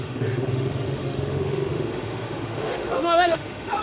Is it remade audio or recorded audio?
remade